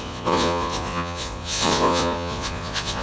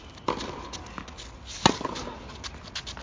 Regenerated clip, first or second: first